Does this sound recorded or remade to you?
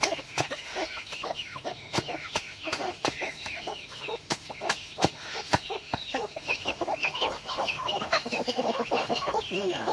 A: remade